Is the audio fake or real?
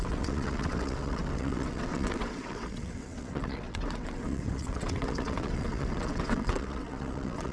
fake